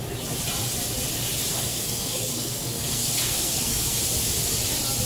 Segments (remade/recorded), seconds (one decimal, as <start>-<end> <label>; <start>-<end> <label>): 0.0-1.5 recorded; 1.5-4.0 remade; 4.0-5.1 recorded